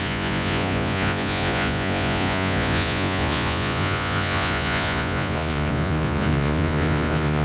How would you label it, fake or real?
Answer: fake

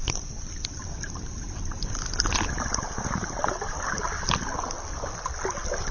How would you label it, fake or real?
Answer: real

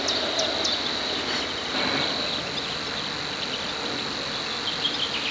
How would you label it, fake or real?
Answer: real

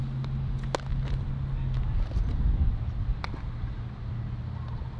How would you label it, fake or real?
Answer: real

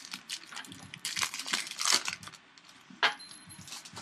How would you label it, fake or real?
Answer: real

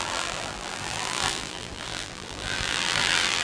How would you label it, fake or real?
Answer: fake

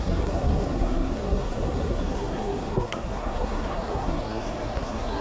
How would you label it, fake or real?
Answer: fake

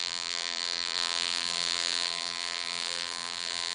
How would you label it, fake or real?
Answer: fake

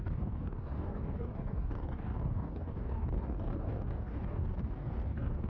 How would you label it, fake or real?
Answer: fake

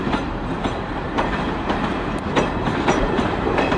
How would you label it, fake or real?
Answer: fake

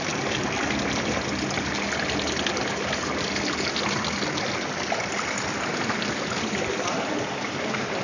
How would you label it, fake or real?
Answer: real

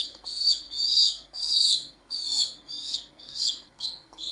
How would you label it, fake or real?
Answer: fake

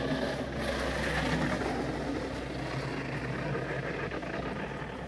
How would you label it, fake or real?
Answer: real